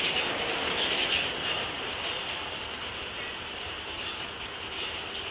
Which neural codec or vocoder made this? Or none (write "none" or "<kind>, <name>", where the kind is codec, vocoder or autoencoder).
none